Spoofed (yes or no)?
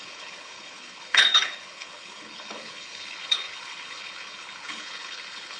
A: yes